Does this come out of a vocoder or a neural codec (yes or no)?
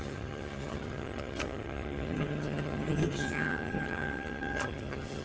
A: yes